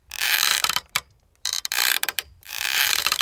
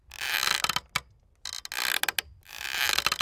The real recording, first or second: second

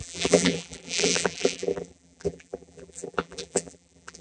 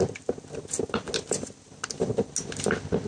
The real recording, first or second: second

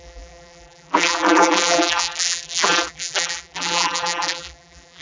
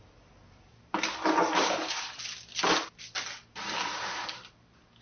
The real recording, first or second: second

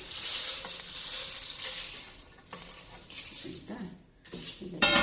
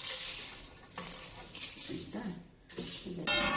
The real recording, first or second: second